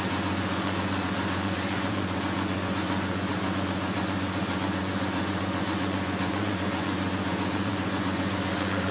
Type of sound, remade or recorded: remade